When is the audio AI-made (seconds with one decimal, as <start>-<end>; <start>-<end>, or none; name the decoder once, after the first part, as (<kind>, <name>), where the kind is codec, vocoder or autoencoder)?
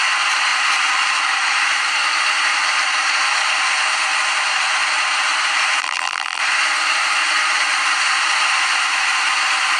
5.8-6.4 (vocoder, BigVGAN v2)